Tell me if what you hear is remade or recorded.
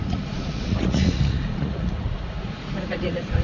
remade